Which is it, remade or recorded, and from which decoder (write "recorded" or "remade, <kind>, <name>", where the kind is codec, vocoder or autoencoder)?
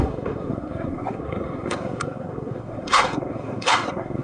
remade, codec, SNAC